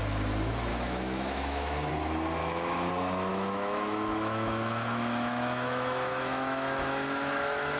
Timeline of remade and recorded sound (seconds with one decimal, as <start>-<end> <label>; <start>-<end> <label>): 0.0-0.7 recorded; 0.7-1.9 remade; 1.9-2.4 recorded; 2.4-2.9 remade; 2.9-3.3 recorded; 3.3-7.8 remade